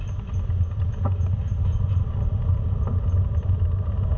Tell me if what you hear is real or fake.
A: real